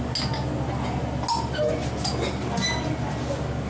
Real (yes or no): yes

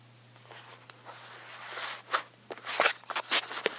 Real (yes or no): yes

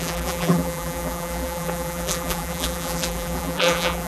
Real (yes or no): no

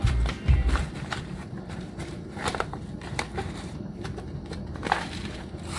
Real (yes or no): no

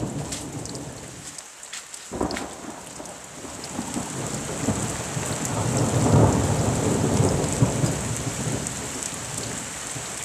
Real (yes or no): yes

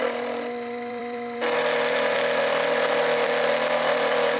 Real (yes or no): no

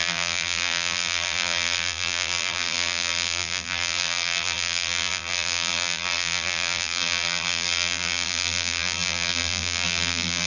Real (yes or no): no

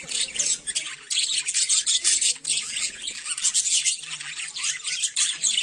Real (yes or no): no